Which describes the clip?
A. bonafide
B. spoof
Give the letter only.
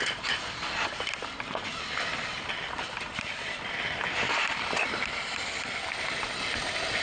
B